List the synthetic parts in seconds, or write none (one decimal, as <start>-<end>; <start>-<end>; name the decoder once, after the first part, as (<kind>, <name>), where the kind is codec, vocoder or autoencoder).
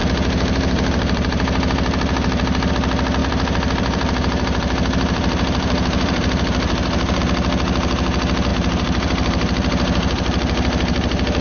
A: 0.0-2.7 (vocoder, BigVGAN v2); 3.2-7.2; 8.5-11.4